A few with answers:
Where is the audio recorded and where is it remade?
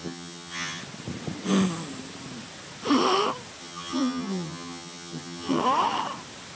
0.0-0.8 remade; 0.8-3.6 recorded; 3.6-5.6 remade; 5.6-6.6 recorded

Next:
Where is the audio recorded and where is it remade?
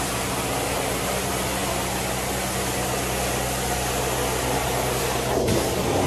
0.0-6.1 recorded